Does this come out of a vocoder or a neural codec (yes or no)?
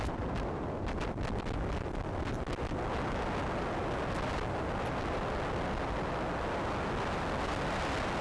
no